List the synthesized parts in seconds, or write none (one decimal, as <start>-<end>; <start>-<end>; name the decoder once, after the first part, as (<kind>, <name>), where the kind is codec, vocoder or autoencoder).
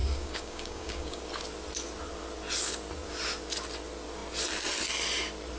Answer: 0.0-1.2 (codec, DAC)